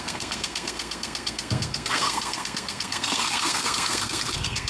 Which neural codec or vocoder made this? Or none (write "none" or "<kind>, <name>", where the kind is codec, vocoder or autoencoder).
codec, SNAC